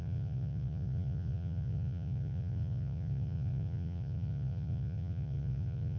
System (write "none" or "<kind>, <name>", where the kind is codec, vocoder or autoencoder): vocoder, Vocos